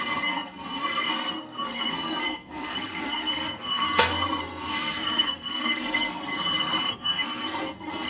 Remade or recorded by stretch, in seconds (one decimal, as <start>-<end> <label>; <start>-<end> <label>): 0.0-6.3 remade; 6.3-6.9 recorded; 6.9-8.1 remade